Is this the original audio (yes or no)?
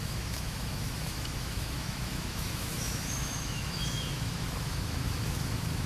no